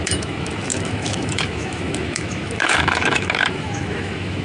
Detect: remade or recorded remade